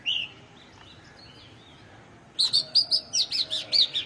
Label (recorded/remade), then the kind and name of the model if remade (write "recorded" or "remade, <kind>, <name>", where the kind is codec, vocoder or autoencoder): recorded